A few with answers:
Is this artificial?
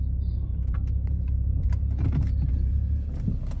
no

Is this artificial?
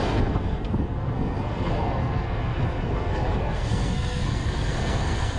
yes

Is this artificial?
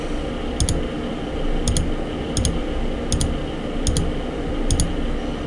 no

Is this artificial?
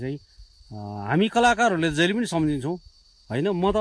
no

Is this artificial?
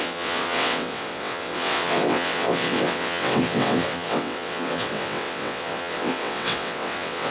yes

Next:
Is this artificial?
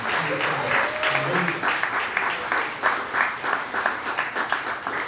no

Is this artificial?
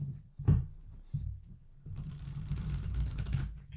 yes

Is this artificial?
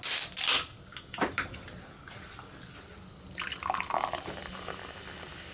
no